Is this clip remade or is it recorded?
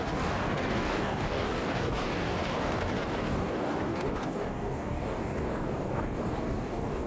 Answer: remade